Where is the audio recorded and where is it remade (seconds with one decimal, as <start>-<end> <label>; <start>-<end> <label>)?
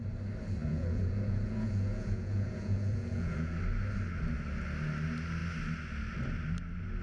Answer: 0.0-0.6 recorded; 0.6-3.6 remade; 3.6-7.0 recorded